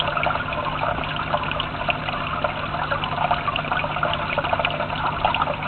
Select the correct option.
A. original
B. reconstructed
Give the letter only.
A